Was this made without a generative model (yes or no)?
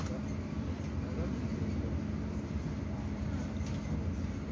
yes